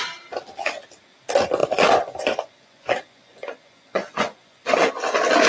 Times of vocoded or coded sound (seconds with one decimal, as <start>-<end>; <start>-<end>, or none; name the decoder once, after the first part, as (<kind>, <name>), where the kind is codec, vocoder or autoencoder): 1.6-4.9 (vocoder, Vocos)